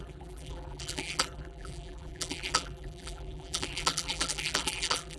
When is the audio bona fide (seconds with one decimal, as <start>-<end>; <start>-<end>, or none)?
none